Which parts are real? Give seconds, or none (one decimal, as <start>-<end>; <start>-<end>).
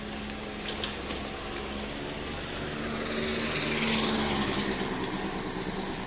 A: 0.0-6.1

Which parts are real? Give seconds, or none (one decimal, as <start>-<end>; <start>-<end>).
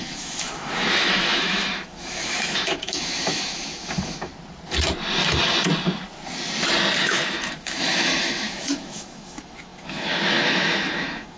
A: 4.3-7.0